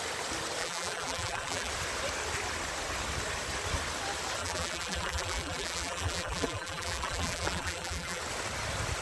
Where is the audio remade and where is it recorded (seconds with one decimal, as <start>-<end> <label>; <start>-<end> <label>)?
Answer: 0.0-0.6 recorded; 0.6-1.7 remade; 1.7-4.4 recorded; 4.4-8.2 remade; 8.2-9.0 recorded